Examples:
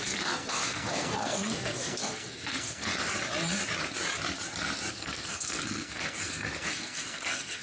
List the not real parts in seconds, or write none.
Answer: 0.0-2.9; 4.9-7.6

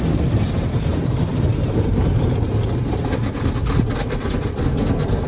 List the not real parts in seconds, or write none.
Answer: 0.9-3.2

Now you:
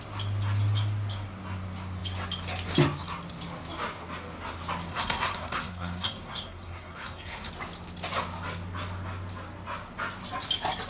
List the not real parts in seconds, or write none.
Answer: 4.9-7.5

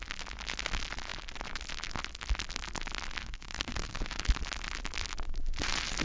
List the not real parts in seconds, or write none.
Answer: 3.2-4.2